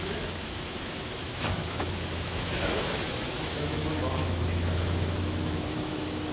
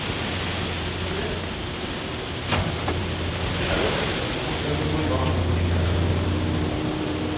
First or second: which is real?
second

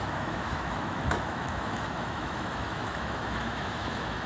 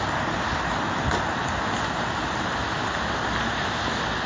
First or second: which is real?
second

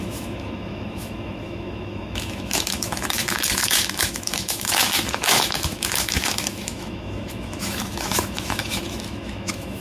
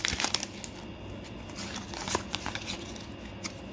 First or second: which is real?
second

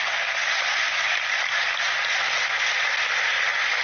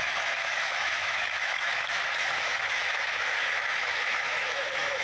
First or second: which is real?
first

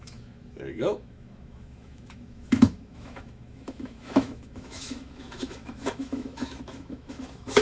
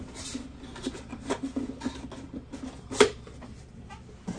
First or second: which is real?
second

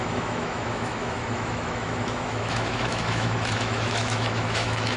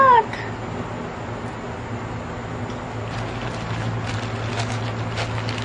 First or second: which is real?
second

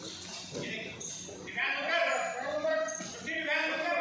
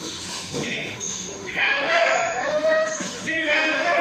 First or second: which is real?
first